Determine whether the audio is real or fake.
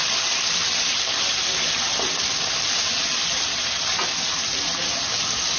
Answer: real